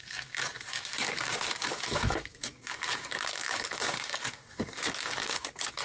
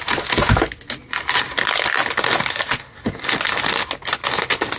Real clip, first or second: second